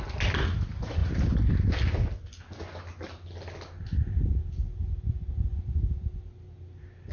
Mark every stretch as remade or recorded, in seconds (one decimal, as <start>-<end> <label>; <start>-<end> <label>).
0.0-1.0 recorded; 1.0-1.7 remade; 1.7-4.8 recorded; 4.8-5.5 remade; 5.5-7.1 recorded